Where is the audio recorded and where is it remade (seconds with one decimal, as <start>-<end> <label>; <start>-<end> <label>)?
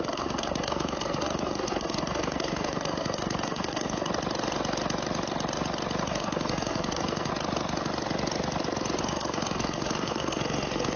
0.0-4.1 remade; 4.1-6.0 recorded; 6.0-7.3 remade; 7.3-9.0 recorded; 9.0-11.0 remade